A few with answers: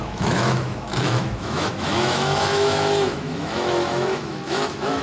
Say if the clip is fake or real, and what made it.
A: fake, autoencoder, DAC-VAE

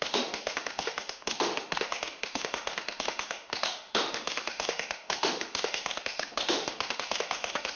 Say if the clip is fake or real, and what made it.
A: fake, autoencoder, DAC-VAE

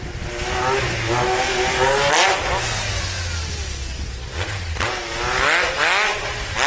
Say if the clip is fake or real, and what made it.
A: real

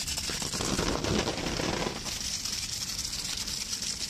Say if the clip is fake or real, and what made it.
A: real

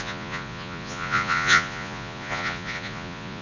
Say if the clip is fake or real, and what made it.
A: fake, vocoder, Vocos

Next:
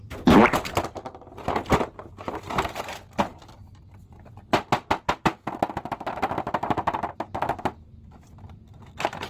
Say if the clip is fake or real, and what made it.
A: real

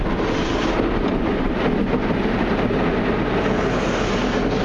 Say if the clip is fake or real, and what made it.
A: real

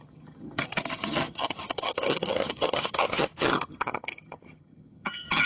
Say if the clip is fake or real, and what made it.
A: fake, vocoder, HiFi-GAN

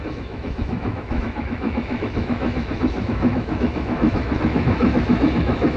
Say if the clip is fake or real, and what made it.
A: fake, autoencoder, DAC-VAE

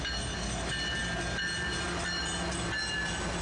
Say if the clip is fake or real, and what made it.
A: real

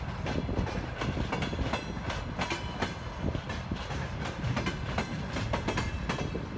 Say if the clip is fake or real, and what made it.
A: real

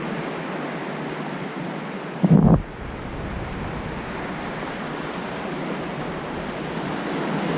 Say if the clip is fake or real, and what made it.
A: real